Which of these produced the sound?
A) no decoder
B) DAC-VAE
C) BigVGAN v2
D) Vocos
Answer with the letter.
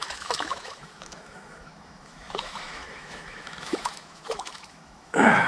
B